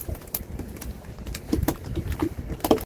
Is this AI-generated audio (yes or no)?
yes